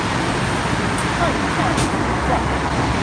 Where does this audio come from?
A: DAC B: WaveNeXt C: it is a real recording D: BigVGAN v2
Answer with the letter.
C